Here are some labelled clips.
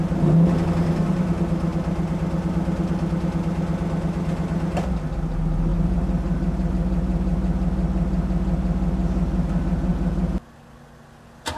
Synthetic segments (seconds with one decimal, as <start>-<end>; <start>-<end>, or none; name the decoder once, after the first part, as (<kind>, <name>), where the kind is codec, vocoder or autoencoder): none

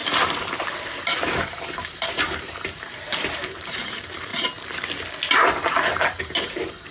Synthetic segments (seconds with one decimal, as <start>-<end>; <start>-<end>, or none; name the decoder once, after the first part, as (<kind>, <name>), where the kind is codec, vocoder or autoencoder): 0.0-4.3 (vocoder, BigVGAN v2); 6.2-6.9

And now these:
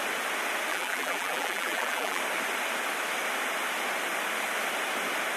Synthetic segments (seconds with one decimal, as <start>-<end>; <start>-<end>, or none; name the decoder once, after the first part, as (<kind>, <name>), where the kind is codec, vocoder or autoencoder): 0.7-2.2 (vocoder, BigVGAN v2)

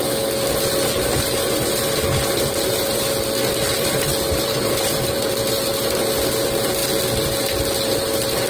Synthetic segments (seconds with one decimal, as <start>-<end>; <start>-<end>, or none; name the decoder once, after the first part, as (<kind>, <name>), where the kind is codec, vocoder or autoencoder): 4.3-5.7 (vocoder, BigVGAN v2)